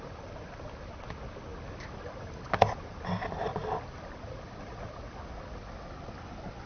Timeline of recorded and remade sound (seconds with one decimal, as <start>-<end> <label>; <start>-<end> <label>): 0.0-6.7 recorded